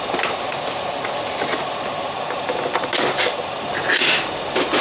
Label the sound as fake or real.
real